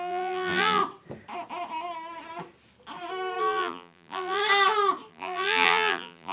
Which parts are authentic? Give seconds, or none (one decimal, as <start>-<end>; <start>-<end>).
0.8-3.4; 4.4-5.1